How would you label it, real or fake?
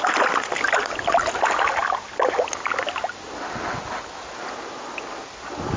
real